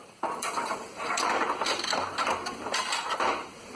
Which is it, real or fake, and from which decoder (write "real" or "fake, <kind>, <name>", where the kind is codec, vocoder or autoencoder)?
fake, vocoder, BigVGAN v2